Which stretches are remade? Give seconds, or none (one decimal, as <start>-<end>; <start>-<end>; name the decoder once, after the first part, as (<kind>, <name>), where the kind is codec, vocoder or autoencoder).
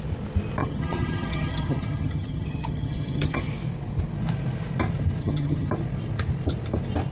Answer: 0.6-3.5 (vocoder, HiFi-GAN); 5.2-5.7